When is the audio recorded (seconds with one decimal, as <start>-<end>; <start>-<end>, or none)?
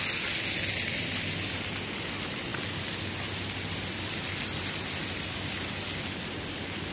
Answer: 0.0-6.9